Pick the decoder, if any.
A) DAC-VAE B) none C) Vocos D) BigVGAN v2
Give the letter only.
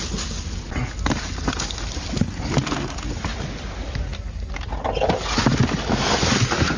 B